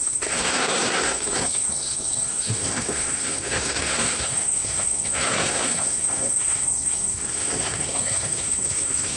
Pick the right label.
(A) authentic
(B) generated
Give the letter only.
B